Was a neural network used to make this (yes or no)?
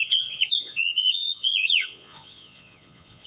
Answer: yes